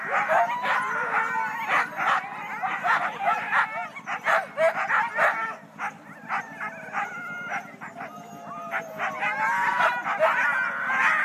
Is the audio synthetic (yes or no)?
no